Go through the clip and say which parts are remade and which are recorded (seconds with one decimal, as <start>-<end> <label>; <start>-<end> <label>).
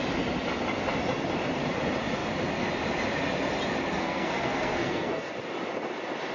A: 0.0-4.0 recorded; 4.0-5.3 remade; 5.3-6.3 recorded